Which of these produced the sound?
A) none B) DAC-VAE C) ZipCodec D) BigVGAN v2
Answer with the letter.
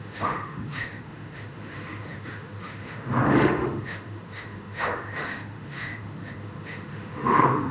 B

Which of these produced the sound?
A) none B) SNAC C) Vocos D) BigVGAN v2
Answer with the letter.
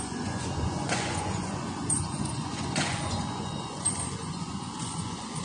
C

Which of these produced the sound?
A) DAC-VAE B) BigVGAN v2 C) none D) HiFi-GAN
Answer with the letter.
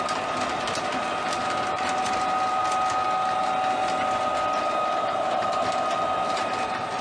C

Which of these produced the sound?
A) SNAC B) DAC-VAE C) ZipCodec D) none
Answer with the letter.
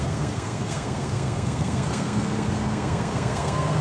A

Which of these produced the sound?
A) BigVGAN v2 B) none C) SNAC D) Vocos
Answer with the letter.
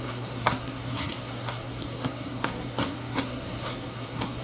C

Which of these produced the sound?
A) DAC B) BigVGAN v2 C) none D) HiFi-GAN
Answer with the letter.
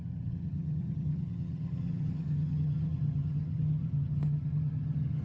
D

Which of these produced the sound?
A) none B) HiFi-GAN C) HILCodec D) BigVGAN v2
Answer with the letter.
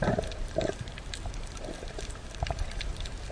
D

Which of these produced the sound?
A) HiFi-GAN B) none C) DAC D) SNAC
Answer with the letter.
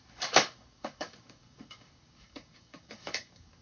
C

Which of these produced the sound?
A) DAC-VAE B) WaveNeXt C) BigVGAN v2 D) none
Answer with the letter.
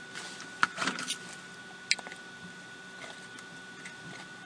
D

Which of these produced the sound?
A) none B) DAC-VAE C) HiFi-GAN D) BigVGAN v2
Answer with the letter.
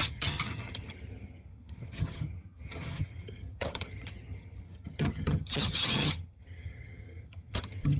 C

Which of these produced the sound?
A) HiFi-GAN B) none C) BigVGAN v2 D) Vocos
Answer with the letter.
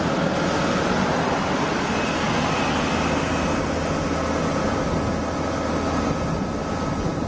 B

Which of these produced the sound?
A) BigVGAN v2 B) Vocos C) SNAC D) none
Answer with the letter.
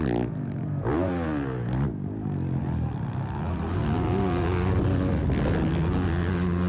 D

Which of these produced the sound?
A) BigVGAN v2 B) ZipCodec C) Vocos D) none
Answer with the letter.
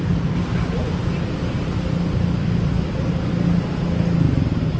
D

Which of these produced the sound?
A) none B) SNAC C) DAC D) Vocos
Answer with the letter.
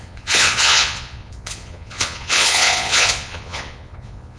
D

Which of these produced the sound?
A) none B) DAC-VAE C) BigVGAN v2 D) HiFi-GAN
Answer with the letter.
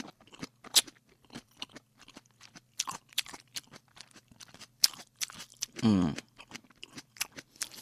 C